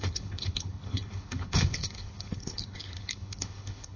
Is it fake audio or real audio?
fake